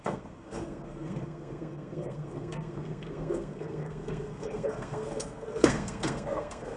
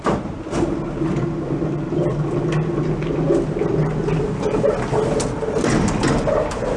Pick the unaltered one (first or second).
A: second